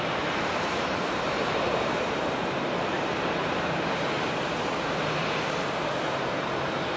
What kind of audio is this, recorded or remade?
remade